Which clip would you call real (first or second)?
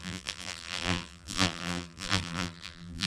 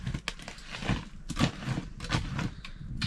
second